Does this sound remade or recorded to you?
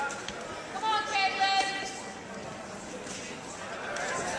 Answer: recorded